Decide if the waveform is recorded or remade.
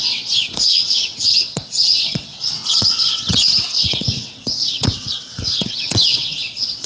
remade